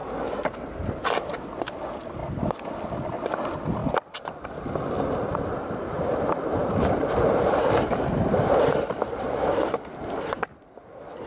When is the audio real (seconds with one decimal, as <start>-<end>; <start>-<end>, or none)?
1.5-6.6

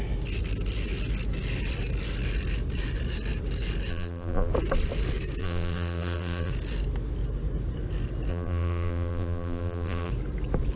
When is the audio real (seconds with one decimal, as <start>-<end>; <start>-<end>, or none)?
0.0-3.9; 4.5-5.4; 6.5-8.3; 10.1-10.8

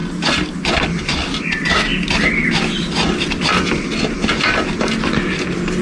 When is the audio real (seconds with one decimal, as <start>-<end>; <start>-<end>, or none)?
0.0-1.9; 2.5-5.8

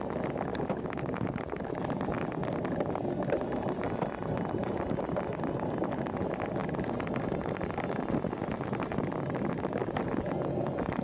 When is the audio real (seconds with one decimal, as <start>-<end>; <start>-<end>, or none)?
0.0-0.5; 1.7-11.0

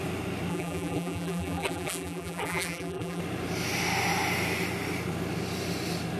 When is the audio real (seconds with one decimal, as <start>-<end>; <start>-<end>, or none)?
0.0-0.5; 3.2-6.2